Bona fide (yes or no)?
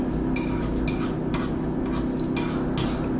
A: yes